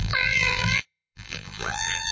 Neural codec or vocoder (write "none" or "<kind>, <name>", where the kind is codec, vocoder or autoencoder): vocoder, BigVGAN v2